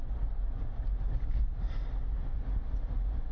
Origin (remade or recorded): recorded